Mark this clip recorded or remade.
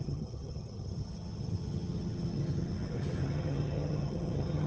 remade